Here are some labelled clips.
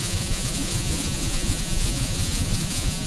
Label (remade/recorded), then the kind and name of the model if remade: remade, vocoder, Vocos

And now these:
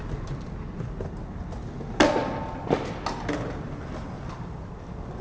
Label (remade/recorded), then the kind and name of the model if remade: recorded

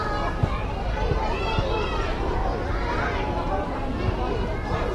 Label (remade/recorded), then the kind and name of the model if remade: recorded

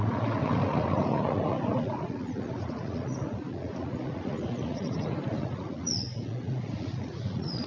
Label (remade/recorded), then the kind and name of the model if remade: remade, vocoder, Vocos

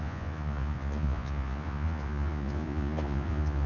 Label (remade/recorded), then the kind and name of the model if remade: remade, vocoder, Vocos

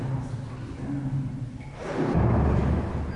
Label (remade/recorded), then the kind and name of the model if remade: recorded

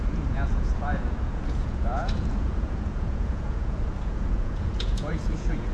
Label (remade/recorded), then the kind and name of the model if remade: remade, vocoder, Vocos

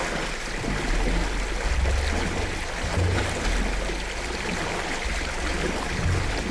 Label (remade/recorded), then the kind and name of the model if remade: recorded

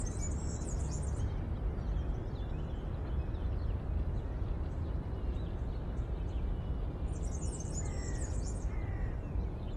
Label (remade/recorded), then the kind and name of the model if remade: recorded